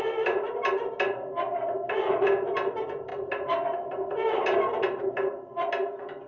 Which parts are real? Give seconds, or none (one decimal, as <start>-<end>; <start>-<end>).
0.0-6.3